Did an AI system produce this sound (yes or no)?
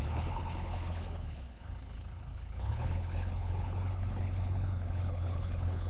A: yes